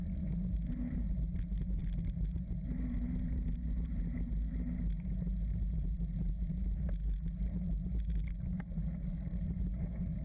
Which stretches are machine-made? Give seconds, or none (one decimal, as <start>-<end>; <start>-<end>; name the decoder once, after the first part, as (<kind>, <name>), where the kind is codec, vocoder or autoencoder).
none